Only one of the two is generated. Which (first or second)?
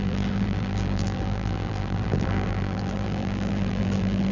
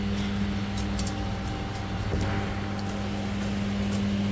first